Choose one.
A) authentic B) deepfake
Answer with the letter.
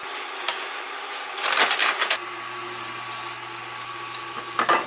A